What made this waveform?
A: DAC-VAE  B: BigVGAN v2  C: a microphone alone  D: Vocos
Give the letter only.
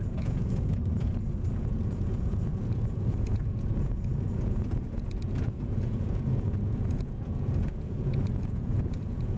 D